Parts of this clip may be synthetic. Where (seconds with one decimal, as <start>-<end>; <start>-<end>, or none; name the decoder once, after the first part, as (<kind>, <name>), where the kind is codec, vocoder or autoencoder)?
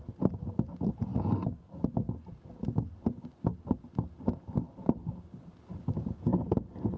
none